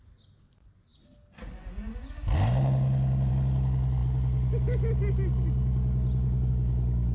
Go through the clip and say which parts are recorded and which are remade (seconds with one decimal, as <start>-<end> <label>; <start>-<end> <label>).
0.0-7.1 recorded